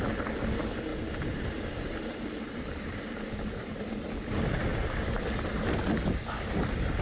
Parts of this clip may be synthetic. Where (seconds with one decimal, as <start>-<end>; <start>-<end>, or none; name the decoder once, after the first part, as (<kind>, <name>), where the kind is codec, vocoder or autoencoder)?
0.9-3.8 (vocoder, BigVGAN v2)